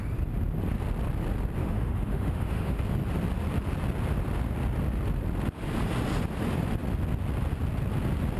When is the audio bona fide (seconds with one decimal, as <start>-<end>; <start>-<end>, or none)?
0.0-1.6; 2.8-8.4

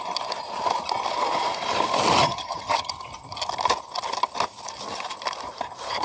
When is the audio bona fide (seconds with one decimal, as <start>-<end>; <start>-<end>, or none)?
0.0-2.2; 2.9-6.0

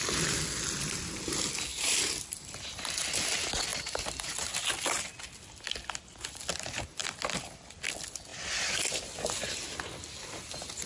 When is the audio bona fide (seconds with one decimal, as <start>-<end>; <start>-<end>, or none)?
0.0-10.9

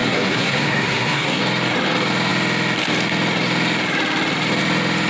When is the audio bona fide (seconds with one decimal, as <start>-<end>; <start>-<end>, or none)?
1.4-5.1

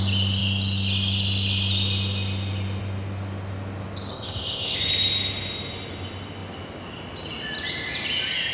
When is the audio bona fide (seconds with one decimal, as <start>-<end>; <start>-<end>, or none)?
0.0-4.1; 4.8-8.5

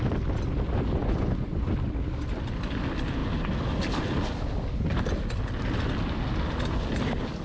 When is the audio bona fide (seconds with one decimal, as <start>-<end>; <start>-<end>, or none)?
0.0-1.0; 1.7-7.4

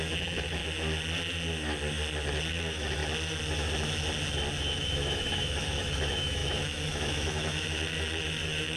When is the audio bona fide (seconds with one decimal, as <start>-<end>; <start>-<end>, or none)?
0.6-2.5; 3.0-4.6

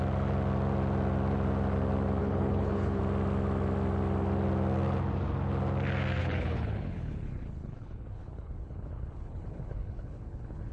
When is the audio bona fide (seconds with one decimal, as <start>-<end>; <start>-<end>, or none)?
0.0-2.2; 3.0-6.2